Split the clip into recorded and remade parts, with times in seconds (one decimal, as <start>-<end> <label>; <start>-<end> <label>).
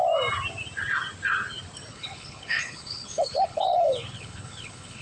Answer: 0.0-1.9 recorded; 1.9-5.0 remade